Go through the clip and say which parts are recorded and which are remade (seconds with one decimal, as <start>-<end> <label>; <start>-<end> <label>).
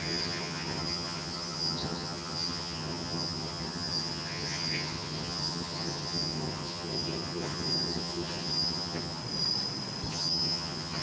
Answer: 0.0-9.2 remade; 9.2-10.1 recorded; 10.1-11.0 remade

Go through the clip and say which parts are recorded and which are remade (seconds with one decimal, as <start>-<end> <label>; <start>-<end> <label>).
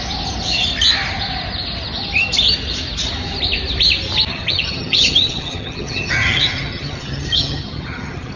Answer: 0.0-4.3 recorded; 4.3-8.4 remade